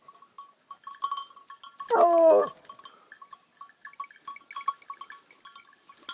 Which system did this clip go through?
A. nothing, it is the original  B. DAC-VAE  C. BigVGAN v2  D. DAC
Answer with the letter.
A